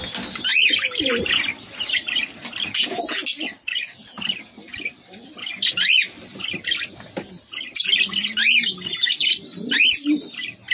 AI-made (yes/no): no